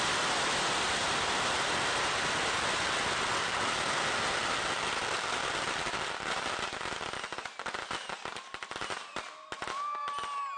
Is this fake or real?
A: real